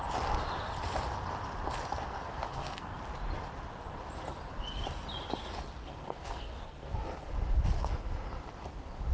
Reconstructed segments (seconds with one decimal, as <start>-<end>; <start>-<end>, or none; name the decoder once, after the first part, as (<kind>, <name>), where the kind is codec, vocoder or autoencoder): 2.1-3.0 (codec, SNAC); 5.8-7.3